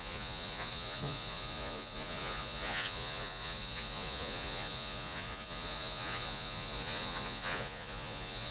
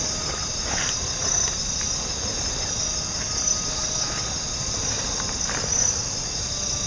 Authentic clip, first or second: second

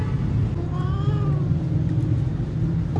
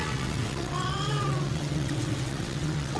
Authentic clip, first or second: first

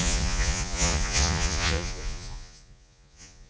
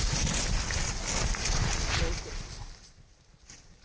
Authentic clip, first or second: second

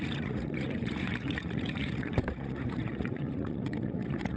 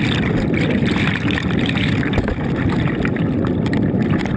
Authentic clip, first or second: second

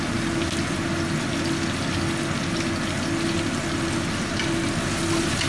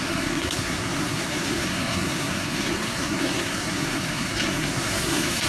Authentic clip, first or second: first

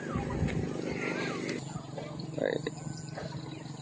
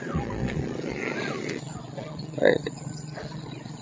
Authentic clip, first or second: first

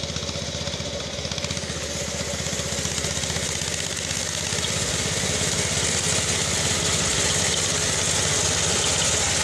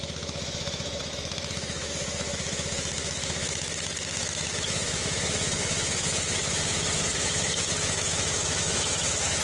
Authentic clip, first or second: first